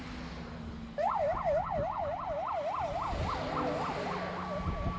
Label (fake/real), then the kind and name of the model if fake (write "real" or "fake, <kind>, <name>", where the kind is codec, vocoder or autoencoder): real